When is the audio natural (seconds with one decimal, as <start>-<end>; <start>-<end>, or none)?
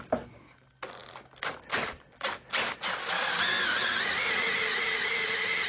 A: 0.0-5.7